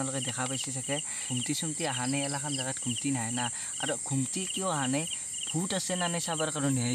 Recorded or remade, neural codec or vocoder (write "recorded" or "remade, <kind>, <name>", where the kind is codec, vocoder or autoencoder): recorded